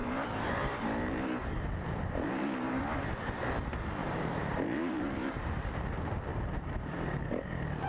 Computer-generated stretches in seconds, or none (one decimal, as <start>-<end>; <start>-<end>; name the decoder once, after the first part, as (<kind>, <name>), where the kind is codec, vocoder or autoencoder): 0.0-2.8 (vocoder, BigVGAN v2); 4.0-5.8; 6.3-7.5